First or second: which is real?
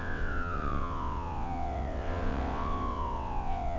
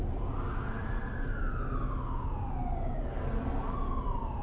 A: second